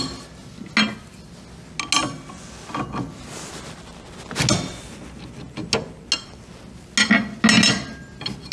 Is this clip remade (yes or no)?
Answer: no